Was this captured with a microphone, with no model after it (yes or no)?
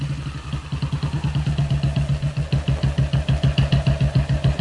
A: yes